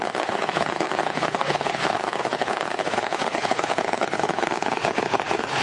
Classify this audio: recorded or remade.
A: remade